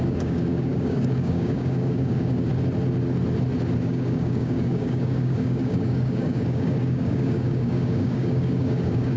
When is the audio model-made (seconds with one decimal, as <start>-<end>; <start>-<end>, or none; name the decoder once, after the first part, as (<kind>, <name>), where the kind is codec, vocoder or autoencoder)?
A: 0.0-2.5 (codec, DAC); 3.8-9.2

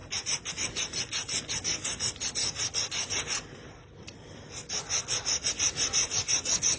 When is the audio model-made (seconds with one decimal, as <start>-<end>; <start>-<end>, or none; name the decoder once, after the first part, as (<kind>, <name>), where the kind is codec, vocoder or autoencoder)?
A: none